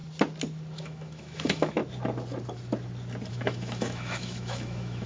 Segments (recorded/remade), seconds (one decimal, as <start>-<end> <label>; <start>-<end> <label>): 0.0-0.8 recorded; 0.8-1.8 remade; 1.8-3.3 recorded; 3.3-5.1 remade